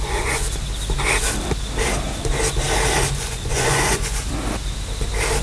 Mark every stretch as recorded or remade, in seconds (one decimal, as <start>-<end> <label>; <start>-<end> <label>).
0.0-0.4 remade; 0.4-3.2 recorded; 3.2-4.2 remade; 4.2-5.4 recorded

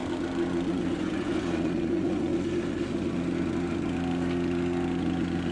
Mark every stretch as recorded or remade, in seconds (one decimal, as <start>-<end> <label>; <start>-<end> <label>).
0.0-0.7 recorded; 0.7-2.3 remade; 2.3-5.5 recorded